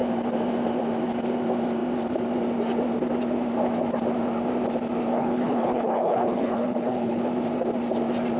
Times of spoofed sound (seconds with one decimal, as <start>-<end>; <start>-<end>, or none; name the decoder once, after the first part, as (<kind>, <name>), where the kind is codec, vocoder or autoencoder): 5.1-7.2 (codec, HILCodec)